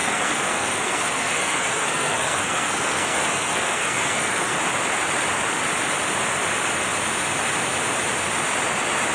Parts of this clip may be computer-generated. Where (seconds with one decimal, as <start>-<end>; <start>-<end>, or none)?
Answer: 0.0-4.6